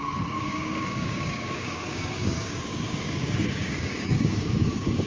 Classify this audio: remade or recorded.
remade